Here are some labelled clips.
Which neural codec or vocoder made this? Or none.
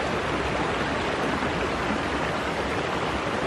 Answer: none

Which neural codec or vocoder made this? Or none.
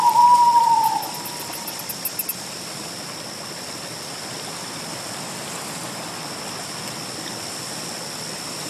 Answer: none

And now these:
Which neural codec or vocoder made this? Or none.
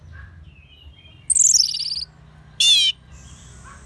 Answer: none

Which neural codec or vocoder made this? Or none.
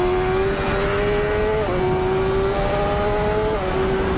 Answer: none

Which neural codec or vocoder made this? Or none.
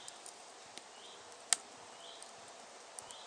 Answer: none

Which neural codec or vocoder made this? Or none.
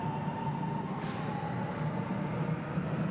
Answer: none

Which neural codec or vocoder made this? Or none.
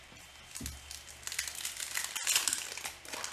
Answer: none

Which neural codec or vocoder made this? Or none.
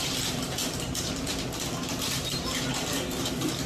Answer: vocoder, BigVGAN v2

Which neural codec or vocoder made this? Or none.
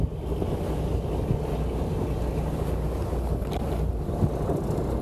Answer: none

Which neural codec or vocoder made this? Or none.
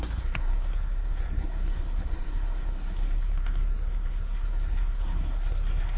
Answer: codec, SNAC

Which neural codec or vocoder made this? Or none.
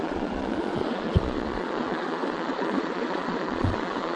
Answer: vocoder, Vocos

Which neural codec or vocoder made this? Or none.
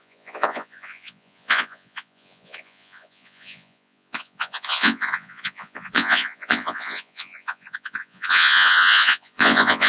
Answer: vocoder, Vocos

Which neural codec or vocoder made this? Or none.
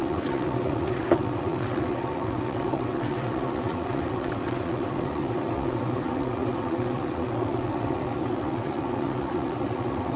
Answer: vocoder, WaveNeXt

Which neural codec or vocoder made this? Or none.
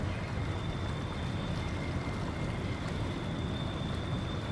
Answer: none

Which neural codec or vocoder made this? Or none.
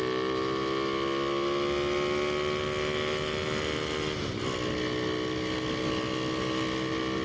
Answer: none